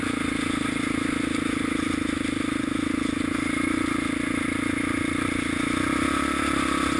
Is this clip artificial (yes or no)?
no